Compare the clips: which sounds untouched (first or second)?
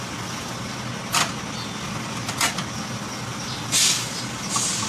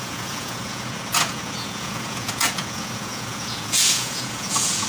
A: first